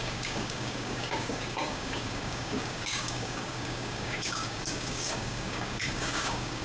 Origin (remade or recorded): remade